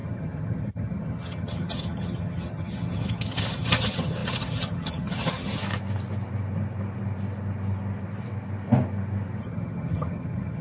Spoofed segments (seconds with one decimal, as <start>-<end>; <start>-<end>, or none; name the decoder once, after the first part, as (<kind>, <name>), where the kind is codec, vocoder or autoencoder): 0.0-5.6 (vocoder, HiFi-GAN); 9.4-10.6